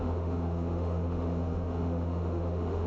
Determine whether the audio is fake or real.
fake